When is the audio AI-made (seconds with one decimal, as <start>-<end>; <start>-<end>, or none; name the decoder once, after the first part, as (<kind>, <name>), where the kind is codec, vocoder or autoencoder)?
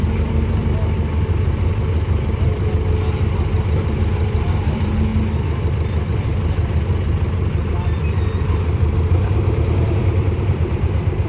0.0-5.1 (vocoder, BigVGAN v2); 5.7-11.3